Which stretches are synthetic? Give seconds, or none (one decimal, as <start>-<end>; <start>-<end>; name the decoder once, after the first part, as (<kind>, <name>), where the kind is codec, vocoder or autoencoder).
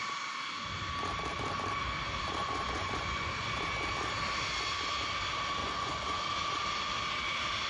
2.4-3.6 (vocoder, Vocos); 5.6-6.2